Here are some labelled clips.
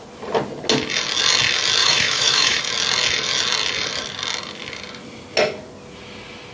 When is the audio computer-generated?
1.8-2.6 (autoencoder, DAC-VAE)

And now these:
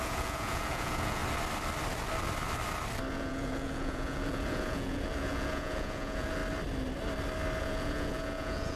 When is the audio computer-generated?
0.0-1.2 (vocoder, Vocos); 3.1-6.4; 7.6-8.8

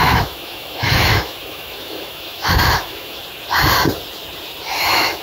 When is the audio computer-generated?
0.0-3.2 (autoencoder, DAC-VAE); 4.8-5.2

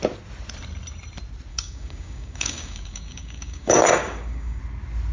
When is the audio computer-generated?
1.5-4.6 (codec, DAC)

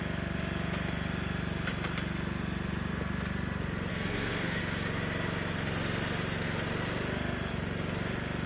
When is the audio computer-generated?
3.9-4.6 (codec, SNAC)

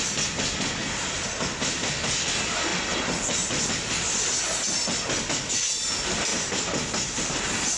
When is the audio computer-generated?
6.3-7.2 (vocoder, BigVGAN v2)